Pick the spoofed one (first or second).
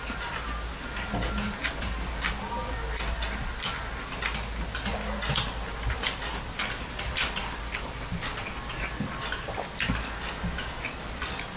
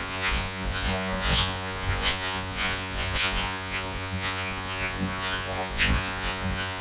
second